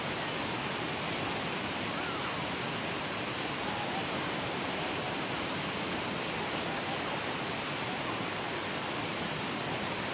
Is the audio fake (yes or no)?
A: no